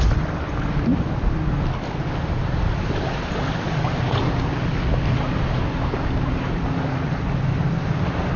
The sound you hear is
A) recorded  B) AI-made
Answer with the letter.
A